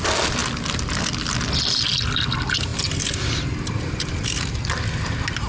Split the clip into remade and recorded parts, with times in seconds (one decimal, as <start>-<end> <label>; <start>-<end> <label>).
0.0-5.5 recorded